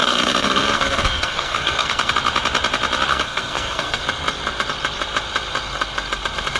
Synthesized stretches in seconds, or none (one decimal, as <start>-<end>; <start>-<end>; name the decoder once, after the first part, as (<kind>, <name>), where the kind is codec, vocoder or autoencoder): 0.0-2.1 (codec, SNAC); 3.1-4.0